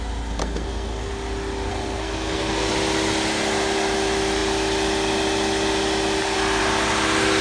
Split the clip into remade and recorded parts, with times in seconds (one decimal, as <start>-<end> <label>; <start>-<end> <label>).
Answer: 0.0-0.4 recorded; 0.4-1.1 remade; 1.1-1.7 recorded; 1.7-2.7 remade; 2.7-7.4 recorded